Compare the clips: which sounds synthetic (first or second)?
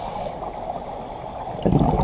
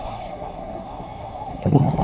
second